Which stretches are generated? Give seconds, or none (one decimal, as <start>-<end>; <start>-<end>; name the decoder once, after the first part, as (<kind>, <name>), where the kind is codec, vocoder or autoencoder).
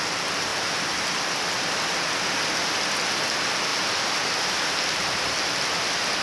none